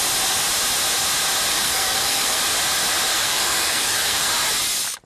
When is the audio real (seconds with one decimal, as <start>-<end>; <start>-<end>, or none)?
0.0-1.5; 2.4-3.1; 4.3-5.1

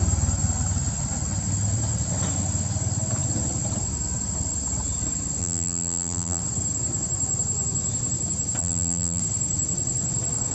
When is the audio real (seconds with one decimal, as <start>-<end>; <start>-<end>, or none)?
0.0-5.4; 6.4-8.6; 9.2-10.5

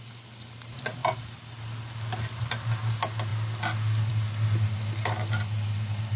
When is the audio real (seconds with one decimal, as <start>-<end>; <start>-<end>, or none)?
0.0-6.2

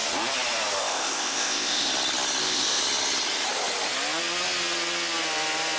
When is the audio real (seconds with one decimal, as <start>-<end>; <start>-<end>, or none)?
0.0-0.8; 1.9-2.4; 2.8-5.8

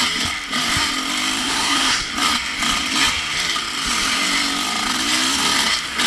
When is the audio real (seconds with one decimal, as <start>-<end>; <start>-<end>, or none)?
0.0-1.4; 2.1-6.1

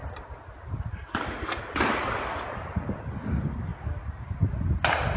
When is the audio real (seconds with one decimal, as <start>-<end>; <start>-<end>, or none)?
0.0-5.2

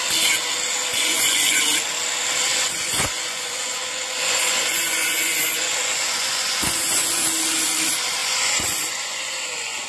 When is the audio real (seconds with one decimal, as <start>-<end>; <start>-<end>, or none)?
0.0-0.9; 1.6-2.5; 7.2-8.2

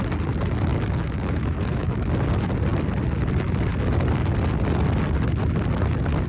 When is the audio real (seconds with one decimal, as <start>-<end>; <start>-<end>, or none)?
0.0-0.7; 2.1-6.3